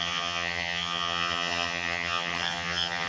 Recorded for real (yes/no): no